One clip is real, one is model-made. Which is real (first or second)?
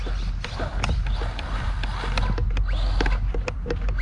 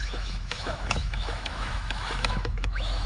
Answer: first